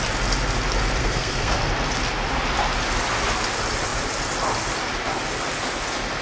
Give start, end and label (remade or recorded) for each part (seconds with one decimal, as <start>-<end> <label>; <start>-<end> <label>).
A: 0.0-1.0 recorded; 1.0-1.6 remade; 1.6-6.2 recorded